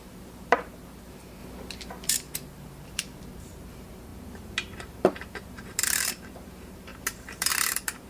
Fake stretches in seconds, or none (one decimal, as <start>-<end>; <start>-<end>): 0.0-1.4; 2.1-8.1